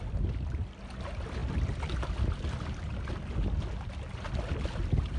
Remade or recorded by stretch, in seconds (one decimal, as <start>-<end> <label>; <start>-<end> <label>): 0.0-5.2 recorded